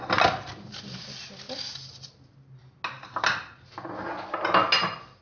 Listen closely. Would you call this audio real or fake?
real